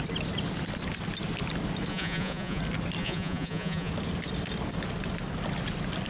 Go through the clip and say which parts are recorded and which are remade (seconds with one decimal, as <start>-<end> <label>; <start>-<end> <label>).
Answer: 0.0-1.9 recorded; 1.9-2.6 remade; 2.6-3.0 recorded; 3.0-3.9 remade; 3.9-6.1 recorded